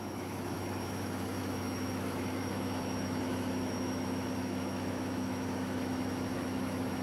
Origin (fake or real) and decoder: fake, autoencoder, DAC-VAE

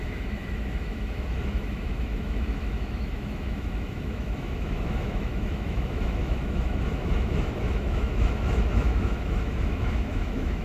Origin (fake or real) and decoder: fake, autoencoder, DAC-VAE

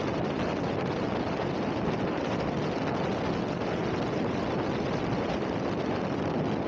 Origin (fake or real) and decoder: real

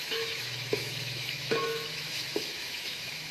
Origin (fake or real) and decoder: fake, autoencoder, DAC-VAE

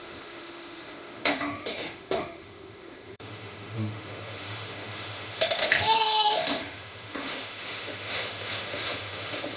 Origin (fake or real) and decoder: fake, autoencoder, DAC-VAE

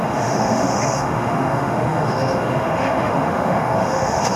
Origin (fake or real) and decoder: fake, autoencoder, DAC-VAE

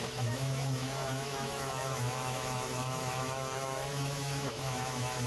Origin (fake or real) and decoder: fake, autoencoder, DAC-VAE